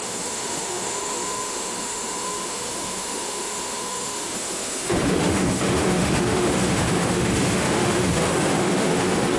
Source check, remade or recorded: remade